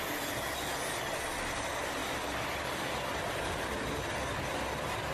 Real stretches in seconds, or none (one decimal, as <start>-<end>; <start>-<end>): 0.0-5.1